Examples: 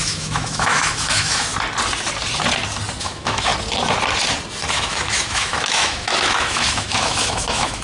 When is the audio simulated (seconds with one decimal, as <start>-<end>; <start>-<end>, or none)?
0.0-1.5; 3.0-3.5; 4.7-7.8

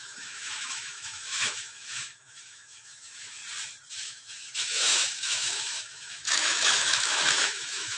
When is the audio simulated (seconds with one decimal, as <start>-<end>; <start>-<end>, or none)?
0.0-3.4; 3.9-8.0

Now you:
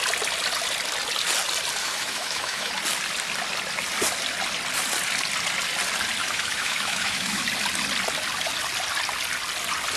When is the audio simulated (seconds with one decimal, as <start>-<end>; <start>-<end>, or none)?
1.8-2.7; 6.2-7.4

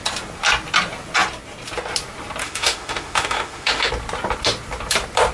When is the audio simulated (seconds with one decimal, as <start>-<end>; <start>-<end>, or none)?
2.4-3.9